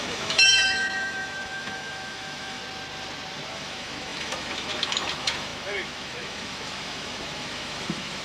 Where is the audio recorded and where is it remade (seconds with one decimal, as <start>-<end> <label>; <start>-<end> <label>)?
0.0-2.6 remade; 2.6-3.5 recorded; 3.5-8.2 remade

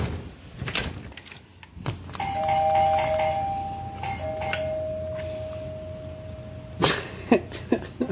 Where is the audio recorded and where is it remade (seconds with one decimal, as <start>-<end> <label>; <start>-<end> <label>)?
0.0-8.1 recorded

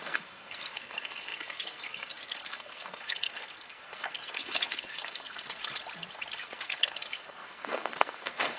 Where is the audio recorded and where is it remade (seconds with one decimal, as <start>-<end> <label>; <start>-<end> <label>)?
0.0-5.6 remade; 5.6-6.4 recorded; 6.4-8.6 remade